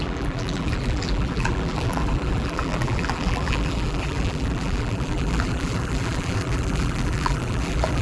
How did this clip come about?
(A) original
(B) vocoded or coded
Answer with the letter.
B